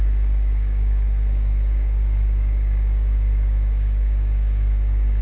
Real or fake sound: fake